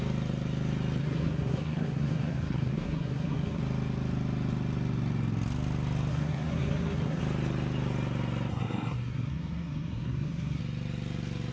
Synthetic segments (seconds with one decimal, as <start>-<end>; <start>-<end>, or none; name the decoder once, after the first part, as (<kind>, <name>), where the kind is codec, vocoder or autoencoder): 1.0-3.6 (codec, SNAC); 6.1-7.2; 8.5-10.6